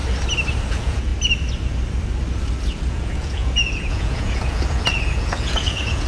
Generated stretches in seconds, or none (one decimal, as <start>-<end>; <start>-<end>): 0.6-1.1; 2.9-6.1